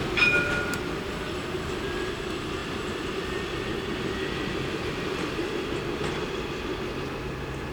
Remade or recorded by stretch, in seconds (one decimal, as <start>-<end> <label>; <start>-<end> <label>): 0.0-2.6 recorded; 2.6-7.2 remade; 7.2-7.7 recorded